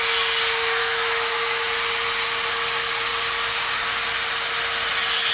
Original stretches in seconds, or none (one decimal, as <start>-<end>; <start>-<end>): 0.0-0.8; 1.7-5.3